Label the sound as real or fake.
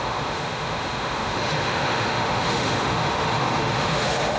fake